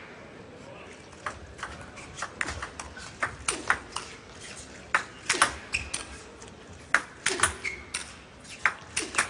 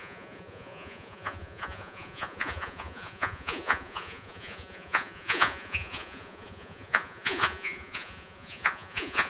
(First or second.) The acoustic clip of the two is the first